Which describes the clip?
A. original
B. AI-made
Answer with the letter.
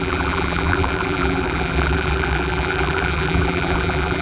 B